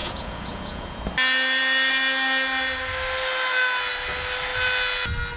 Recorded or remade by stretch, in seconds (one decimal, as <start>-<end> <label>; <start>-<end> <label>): 0.0-1.0 remade; 1.0-5.4 recorded